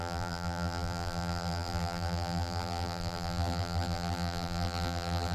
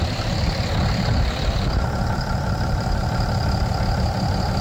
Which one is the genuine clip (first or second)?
second